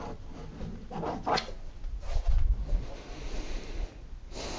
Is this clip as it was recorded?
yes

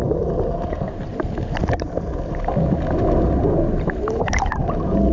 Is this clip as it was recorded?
yes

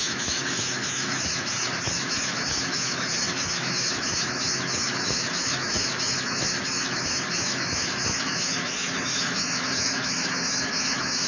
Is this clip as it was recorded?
no